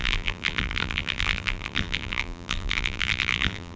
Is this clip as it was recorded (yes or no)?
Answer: no